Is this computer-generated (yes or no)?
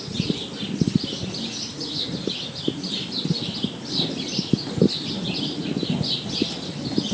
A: no